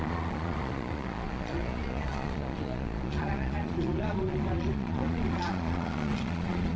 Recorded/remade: remade